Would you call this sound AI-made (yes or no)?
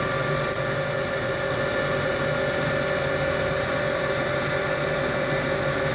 no